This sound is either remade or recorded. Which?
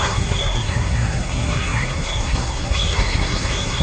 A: remade